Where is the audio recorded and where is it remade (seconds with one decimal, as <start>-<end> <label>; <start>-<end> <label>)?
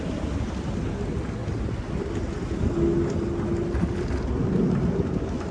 0.0-5.5 recorded